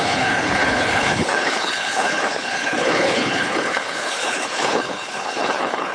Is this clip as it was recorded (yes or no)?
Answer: no